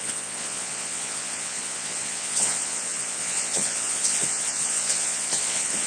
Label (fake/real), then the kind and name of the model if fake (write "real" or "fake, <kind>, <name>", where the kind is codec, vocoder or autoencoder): fake, vocoder, Vocos